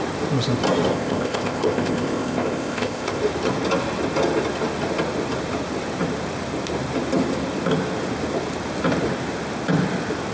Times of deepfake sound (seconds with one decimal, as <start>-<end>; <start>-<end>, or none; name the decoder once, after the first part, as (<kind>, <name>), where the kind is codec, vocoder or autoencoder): 0.9-3.2 (codec, ZipCodec)